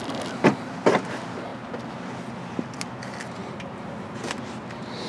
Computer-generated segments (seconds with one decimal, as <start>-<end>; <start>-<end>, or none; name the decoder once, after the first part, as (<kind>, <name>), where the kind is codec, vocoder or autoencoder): none